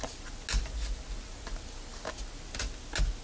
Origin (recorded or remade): recorded